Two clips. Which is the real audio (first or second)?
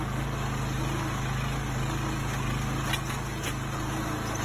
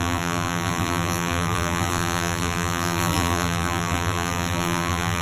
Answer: first